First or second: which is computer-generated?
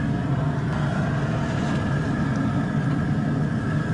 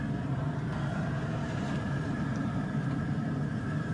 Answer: second